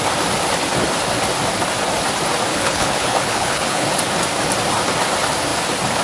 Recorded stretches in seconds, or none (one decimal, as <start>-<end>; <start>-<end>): 0.0-2.5; 3.9-6.0